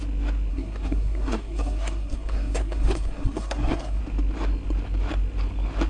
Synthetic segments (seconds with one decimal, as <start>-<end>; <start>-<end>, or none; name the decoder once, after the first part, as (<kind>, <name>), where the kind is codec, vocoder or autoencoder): 0.5-4.0 (codec, SNAC)